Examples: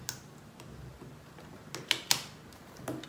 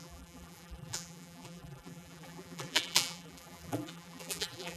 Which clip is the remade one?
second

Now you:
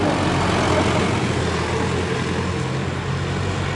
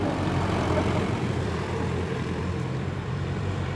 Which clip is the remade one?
second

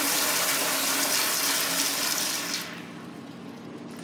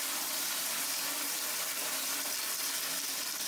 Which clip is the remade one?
second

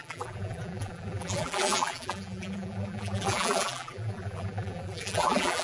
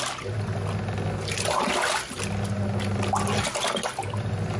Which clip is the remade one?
first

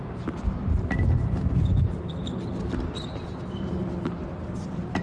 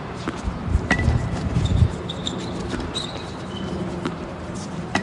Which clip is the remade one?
second